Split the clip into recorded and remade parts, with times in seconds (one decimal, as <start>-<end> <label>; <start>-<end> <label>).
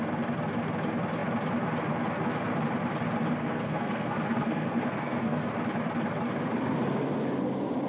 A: 0.0-3.4 recorded; 3.4-5.5 remade; 5.5-7.9 recorded